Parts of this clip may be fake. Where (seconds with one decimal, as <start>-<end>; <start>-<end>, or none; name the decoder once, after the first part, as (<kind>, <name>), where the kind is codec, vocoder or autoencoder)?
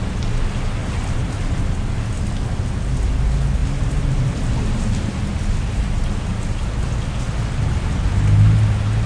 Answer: 0.8-1.5 (vocoder, BigVGAN v2); 3.6-5.2